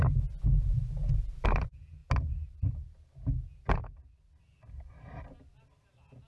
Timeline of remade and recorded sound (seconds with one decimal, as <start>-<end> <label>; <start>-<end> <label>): 0.0-6.3 recorded